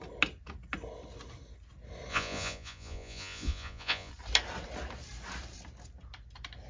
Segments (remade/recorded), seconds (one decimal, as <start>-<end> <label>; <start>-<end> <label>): 0.0-2.1 recorded; 2.1-4.1 remade; 4.1-6.7 recorded